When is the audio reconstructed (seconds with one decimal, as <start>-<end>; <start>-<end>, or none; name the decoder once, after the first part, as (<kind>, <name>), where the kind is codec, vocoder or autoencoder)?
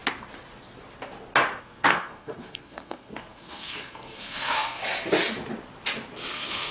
1.6-4.8 (codec, SNAC); 6.3-6.7